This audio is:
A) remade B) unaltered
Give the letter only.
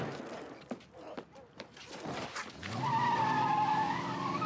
B